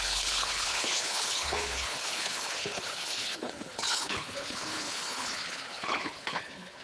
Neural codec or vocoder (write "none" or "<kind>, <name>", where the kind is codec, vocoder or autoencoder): codec, HILCodec